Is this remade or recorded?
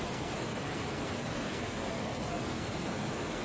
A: remade